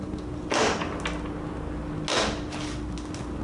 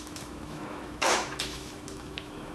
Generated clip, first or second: second